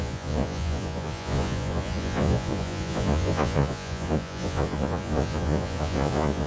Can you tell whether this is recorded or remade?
remade